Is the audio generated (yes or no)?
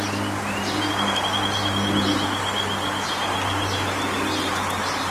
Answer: no